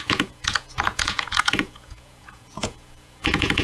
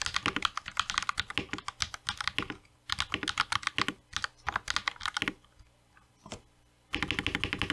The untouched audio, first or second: second